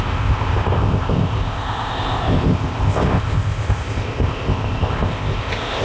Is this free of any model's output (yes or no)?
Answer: no